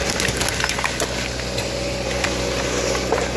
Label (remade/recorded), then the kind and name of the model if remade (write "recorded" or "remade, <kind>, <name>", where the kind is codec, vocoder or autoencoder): recorded